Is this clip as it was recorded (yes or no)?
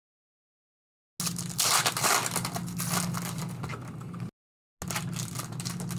yes